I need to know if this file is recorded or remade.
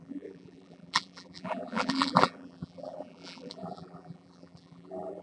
remade